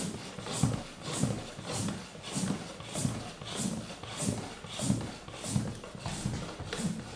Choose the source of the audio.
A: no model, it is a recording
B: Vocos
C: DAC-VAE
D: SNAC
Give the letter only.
A